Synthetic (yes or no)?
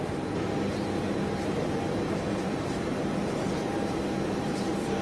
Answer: yes